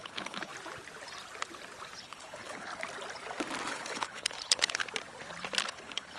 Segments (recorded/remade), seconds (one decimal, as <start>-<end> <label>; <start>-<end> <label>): 0.0-0.5 remade; 0.5-2.0 recorded; 2.0-2.7 remade; 2.7-3.7 recorded; 3.7-4.8 remade; 4.8-5.6 recorded; 5.6-6.2 remade